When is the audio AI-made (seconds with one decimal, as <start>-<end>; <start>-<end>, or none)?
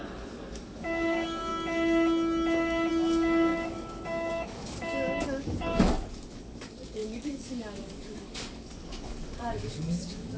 0.0-1.5; 2.9-10.4